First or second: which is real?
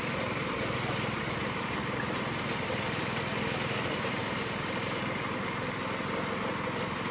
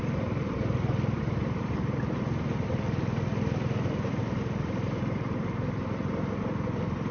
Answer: first